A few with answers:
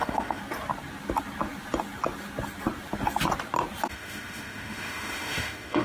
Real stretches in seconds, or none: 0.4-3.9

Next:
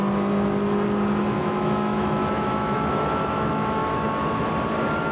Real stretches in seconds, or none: 0.0-1.4; 4.3-5.1

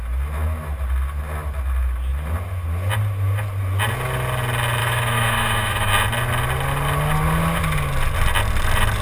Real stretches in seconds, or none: 0.0-4.8; 5.9-9.0

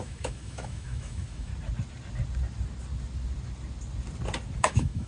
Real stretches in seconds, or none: 1.5-4.6

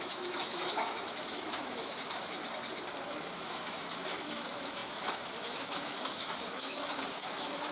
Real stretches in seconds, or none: 2.4-3.1

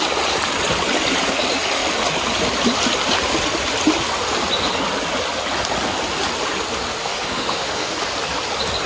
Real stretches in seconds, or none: 0.0-7.0; 7.9-8.9